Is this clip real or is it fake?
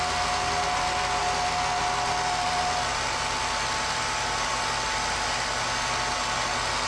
real